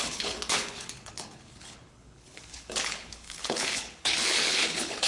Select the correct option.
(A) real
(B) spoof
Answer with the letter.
B